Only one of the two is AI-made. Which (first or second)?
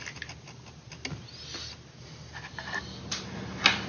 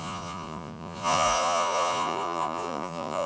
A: second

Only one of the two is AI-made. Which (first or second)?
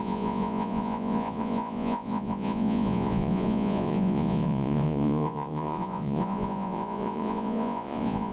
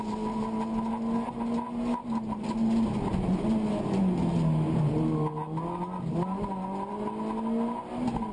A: first